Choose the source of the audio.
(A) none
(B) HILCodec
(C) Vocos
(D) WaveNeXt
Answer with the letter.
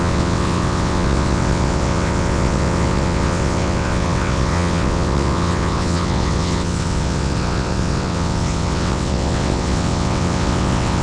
D